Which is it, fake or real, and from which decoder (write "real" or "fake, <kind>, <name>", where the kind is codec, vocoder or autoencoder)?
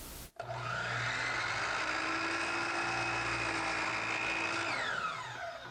real